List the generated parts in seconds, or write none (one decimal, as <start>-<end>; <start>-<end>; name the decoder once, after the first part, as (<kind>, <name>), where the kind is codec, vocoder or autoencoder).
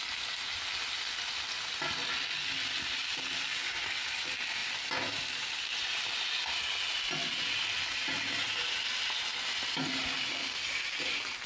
none